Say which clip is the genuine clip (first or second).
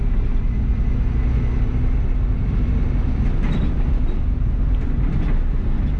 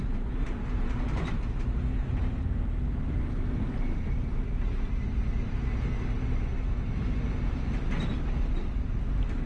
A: first